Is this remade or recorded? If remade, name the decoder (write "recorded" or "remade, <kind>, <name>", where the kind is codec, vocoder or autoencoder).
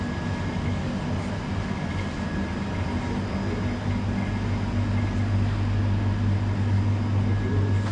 recorded